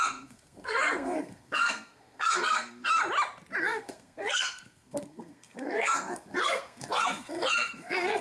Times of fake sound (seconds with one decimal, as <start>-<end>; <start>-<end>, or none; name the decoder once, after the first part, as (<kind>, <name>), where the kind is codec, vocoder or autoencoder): 0.0-3.0 (codec, SNAC); 3.6-8.2